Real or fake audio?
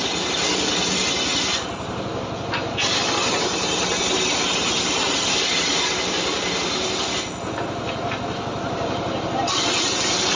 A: real